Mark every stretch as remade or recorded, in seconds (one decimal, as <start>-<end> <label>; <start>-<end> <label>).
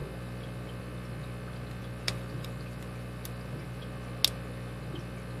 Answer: 0.0-0.8 remade; 0.8-1.8 recorded; 1.8-3.8 remade; 3.8-5.4 recorded